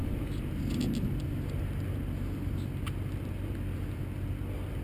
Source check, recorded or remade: recorded